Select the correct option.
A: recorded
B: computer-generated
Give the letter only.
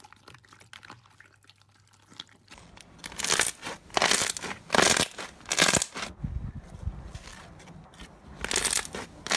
A